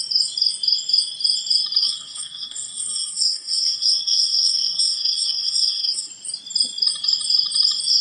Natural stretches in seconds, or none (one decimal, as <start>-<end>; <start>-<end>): 0.0-1.8; 6.1-8.0